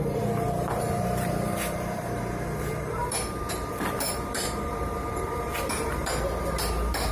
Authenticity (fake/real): fake